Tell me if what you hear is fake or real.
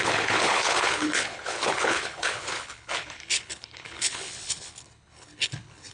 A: fake